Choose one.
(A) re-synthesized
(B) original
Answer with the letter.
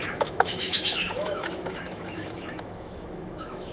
A